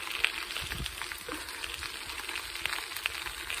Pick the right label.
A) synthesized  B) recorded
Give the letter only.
B